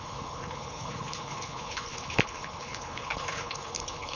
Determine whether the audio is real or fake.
fake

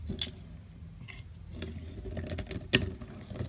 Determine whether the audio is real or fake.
real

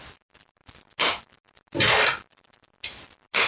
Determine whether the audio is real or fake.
real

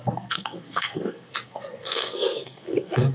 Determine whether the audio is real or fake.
fake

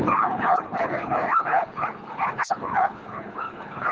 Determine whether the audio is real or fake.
fake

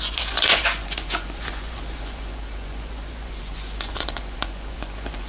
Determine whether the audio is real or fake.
fake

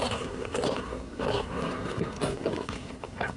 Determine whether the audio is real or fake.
fake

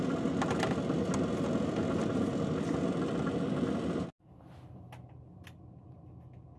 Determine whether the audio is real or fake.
real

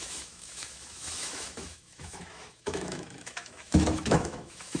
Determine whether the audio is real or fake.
fake